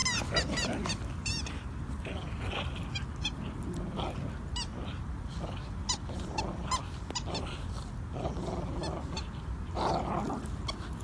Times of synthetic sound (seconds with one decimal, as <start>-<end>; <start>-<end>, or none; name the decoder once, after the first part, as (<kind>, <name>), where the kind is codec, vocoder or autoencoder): none